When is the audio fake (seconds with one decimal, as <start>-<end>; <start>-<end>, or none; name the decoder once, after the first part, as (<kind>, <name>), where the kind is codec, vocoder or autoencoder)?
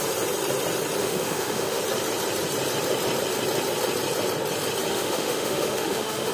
1.0-1.8 (autoencoder, DAC-VAE); 4.9-6.3